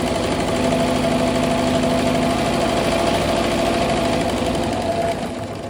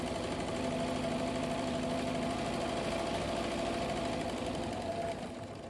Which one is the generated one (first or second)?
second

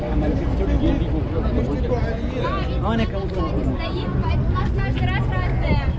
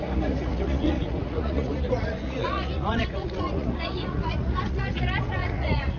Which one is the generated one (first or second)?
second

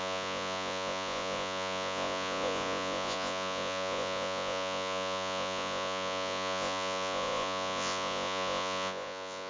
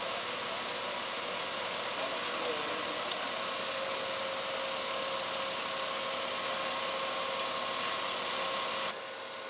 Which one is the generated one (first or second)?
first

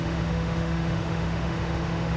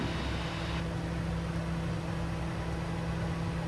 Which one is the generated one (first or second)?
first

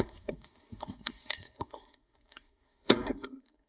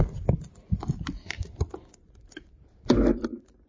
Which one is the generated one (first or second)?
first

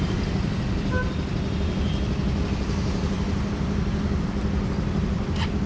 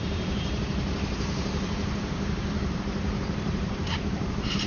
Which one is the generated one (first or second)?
second